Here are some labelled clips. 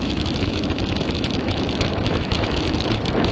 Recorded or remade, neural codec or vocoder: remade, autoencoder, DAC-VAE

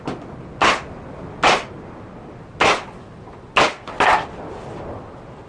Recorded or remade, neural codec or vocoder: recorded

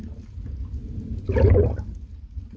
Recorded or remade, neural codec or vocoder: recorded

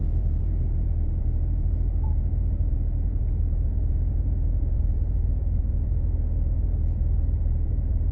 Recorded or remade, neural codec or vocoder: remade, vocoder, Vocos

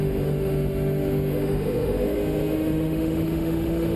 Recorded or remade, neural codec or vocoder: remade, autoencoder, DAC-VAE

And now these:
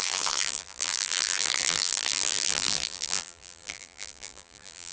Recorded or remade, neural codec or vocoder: remade, vocoder, BigVGAN v2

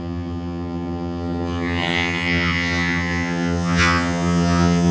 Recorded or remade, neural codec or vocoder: remade, vocoder, HiFi-GAN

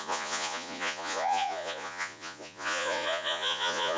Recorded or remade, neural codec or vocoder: remade, vocoder, Vocos